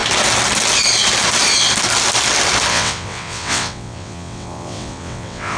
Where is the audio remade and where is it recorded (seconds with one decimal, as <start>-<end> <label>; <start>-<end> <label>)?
0.0-2.7 recorded; 2.7-5.6 remade